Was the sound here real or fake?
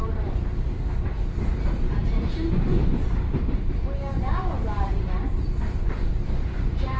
fake